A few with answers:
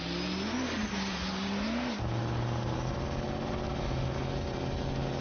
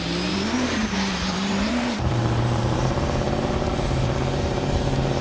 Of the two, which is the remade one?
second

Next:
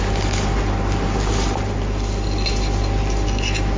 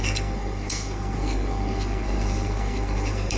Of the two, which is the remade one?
second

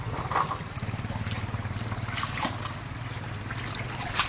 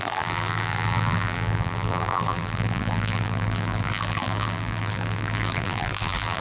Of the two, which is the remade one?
second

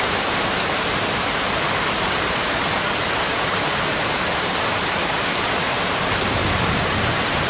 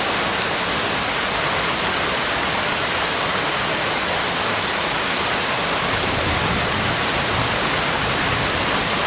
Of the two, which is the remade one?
first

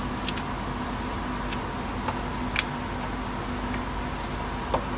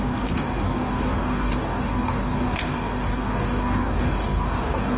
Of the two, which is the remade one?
second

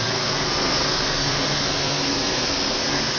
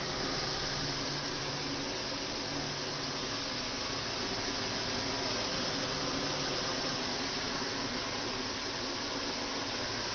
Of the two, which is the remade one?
first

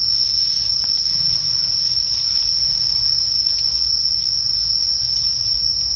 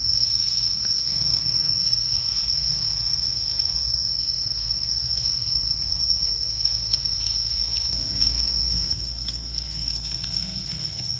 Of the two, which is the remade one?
second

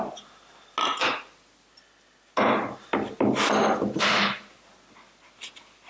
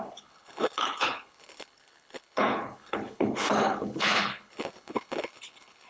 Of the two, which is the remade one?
second